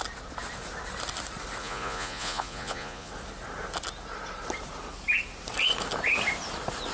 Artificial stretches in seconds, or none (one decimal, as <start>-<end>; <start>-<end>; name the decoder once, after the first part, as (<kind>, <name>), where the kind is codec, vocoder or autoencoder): 1.6-3.1 (vocoder, Vocos)